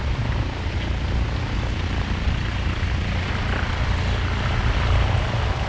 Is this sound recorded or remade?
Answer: recorded